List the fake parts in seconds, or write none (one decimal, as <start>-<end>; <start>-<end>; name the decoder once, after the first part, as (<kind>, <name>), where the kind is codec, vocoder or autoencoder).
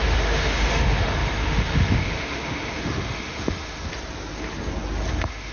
0.0-3.9 (autoencoder, DAC-VAE); 5.1-5.5